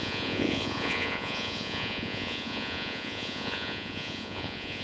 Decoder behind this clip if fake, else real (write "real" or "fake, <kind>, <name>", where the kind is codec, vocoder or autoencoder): fake, vocoder, Vocos